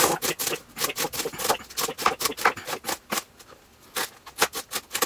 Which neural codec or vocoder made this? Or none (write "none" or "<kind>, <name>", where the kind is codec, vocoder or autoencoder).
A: none